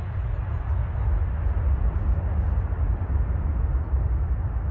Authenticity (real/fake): real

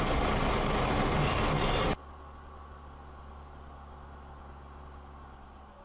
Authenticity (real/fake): real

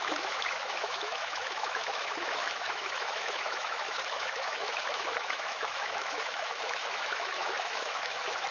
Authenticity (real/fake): fake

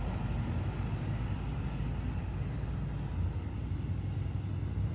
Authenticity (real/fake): real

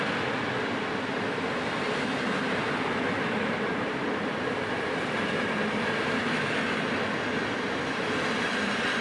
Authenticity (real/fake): real